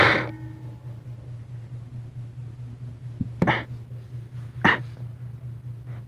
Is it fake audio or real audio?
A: real